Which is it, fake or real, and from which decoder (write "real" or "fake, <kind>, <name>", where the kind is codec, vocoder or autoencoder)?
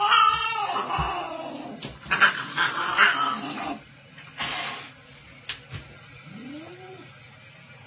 real